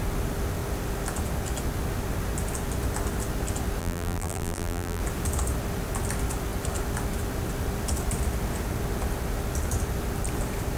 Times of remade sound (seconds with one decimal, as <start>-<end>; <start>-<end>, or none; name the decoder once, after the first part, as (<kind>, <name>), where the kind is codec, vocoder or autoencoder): 3.8-5.0 (vocoder, BigVGAN v2)